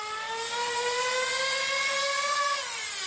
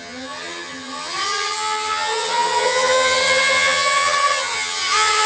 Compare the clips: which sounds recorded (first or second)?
first